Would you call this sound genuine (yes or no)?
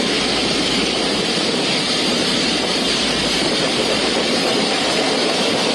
no